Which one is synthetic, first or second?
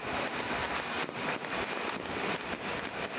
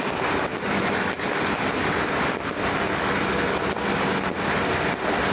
first